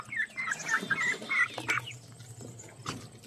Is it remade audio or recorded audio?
recorded